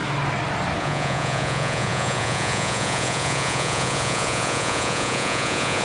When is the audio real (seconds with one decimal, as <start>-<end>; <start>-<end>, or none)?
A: 0.0-0.8